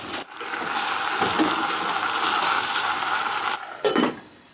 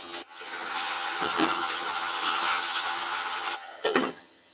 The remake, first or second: second